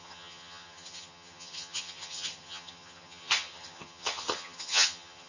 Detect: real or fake fake